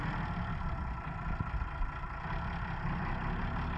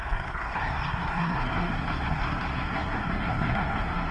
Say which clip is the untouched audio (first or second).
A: first